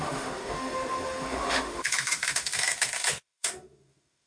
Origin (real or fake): fake